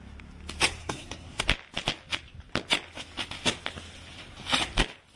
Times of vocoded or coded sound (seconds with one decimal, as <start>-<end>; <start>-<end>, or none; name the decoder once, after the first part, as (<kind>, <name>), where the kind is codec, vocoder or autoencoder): 0.8-1.4 (codec, SNAC)